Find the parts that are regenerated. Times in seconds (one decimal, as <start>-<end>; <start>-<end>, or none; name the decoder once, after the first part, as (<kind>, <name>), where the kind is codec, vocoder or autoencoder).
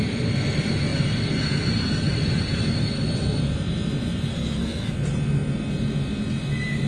4.3-4.9 (codec, SNAC)